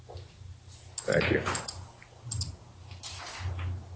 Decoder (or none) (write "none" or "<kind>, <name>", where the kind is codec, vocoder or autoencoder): none